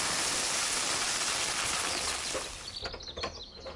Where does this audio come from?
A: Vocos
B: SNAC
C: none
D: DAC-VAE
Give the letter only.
C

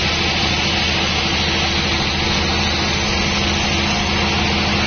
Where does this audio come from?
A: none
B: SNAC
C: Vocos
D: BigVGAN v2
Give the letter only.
A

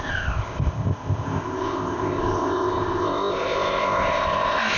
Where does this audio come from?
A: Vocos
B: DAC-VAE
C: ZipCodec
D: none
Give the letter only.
C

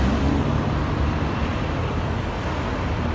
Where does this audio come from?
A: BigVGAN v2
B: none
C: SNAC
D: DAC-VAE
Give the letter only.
B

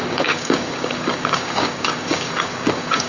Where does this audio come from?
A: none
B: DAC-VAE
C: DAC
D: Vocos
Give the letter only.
C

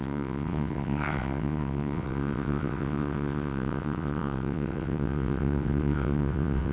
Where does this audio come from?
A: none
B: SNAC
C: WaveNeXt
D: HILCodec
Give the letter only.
C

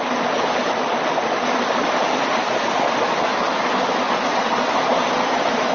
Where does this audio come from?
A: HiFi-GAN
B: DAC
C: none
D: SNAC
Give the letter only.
C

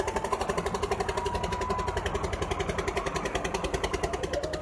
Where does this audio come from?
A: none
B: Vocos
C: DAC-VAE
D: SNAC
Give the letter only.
A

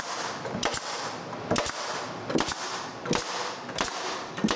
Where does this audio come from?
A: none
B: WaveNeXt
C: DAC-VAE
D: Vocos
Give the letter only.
A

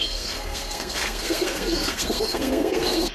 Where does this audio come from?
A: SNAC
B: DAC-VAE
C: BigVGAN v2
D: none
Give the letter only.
A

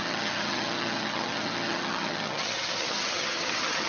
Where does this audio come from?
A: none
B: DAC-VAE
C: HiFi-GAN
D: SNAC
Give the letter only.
C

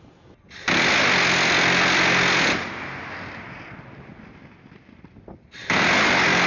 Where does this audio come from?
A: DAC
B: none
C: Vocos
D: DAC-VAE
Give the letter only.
B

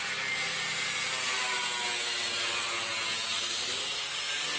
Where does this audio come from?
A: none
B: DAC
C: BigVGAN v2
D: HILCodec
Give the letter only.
A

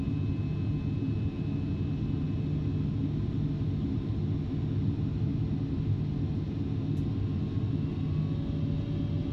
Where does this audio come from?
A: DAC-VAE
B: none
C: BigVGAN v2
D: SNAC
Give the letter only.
B